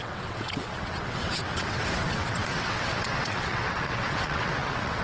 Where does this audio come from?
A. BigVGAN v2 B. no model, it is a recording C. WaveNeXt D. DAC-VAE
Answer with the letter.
C